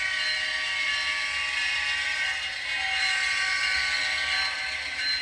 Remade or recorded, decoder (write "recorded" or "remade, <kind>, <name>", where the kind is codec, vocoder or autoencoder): recorded